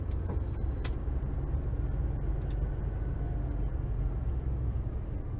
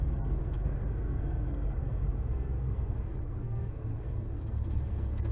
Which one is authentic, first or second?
first